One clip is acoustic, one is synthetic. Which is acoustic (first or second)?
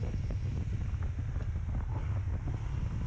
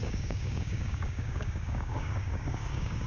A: first